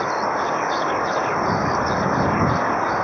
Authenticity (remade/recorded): remade